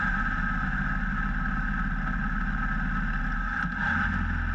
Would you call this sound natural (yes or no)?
yes